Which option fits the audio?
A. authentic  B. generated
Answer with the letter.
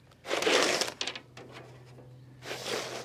A